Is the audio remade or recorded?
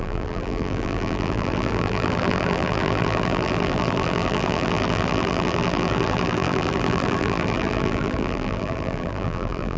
remade